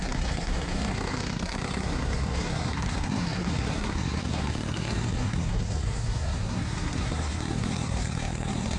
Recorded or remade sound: remade